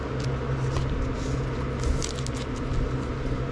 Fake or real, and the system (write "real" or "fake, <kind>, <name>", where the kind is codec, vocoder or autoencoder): real